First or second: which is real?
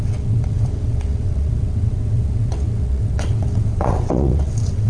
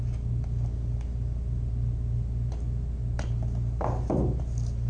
second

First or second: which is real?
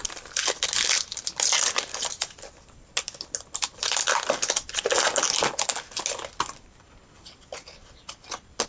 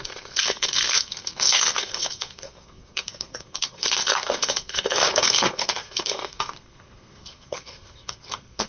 first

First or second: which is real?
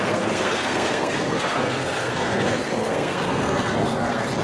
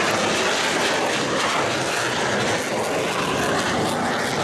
second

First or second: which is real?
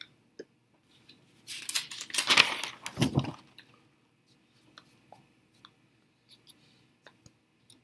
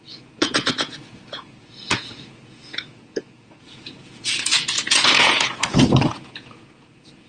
first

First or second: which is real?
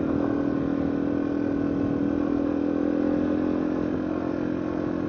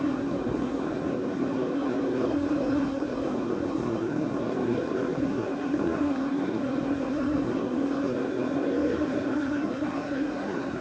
first